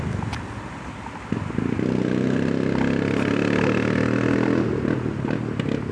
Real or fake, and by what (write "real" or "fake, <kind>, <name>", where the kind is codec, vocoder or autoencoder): real